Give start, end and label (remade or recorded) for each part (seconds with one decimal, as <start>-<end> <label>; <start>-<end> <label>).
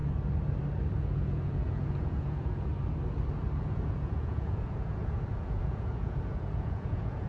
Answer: 0.0-1.0 recorded; 1.0-2.7 remade; 2.7-3.6 recorded; 3.6-7.3 remade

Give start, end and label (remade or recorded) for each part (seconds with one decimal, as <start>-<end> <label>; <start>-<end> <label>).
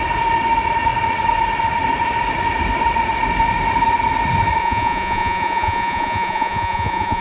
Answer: 0.0-4.6 recorded; 4.6-7.2 remade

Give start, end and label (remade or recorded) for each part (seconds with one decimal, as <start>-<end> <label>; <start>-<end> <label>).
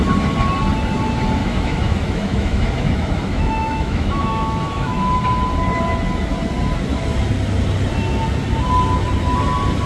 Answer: 0.0-1.4 recorded; 1.4-5.2 remade; 5.2-9.9 recorded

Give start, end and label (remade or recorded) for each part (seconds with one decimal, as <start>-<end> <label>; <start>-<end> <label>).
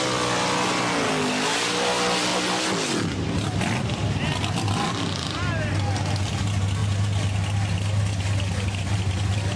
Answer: 0.0-9.6 recorded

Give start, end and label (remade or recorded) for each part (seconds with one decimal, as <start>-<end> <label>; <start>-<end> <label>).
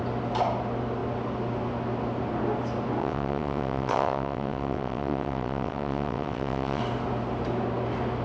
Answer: 0.0-3.0 recorded; 3.0-6.8 remade; 6.8-8.2 recorded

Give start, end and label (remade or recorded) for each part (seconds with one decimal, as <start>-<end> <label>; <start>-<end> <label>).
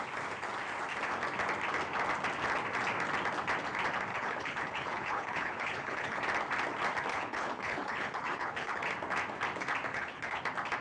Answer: 0.0-4.1 recorded; 4.1-6.2 remade; 6.2-7.1 recorded; 7.1-8.8 remade; 8.8-9.9 recorded; 9.9-10.4 remade; 10.4-10.8 recorded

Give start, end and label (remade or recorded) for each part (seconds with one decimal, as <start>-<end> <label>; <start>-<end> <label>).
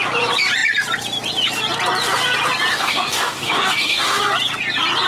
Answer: 0.0-2.7 recorded; 2.7-4.2 remade; 4.2-5.1 recorded